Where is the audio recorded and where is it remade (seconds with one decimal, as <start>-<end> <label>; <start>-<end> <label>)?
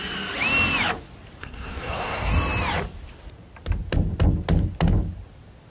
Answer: 0.0-1.4 recorded; 1.4-2.3 remade; 2.3-5.7 recorded